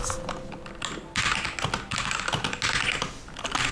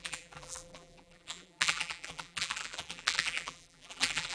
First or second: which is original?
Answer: first